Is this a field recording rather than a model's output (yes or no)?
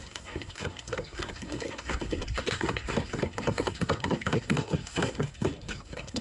no